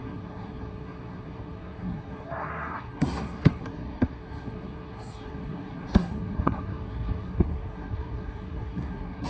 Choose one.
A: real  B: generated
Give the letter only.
B